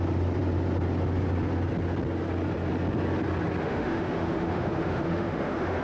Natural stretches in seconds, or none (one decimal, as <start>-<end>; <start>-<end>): 0.0-3.6